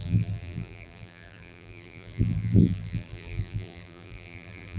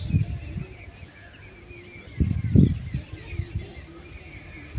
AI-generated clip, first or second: first